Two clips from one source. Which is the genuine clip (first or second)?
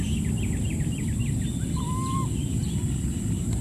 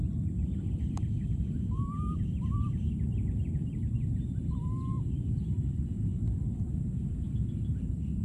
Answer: first